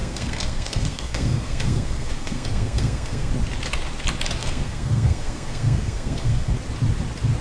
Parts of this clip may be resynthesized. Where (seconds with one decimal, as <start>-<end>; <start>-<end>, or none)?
0.0-3.3; 4.4-6.5